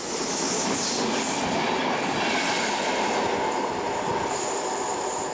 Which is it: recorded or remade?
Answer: recorded